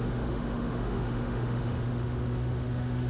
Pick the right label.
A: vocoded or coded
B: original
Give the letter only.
A